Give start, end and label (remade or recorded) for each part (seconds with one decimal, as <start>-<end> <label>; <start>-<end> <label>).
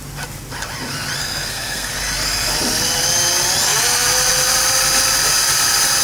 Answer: 0.0-1.2 recorded; 1.2-1.9 remade; 1.9-6.0 recorded